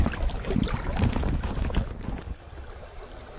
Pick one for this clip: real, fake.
real